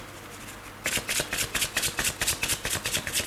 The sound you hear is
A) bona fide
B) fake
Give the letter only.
A